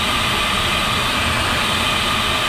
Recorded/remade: remade